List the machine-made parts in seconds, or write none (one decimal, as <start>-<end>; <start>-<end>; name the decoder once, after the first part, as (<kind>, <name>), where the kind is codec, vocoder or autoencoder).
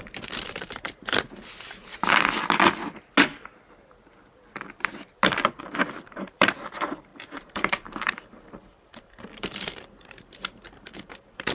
0.0-1.9 (vocoder, BigVGAN v2); 5.6-11.5